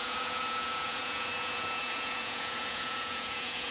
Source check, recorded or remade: remade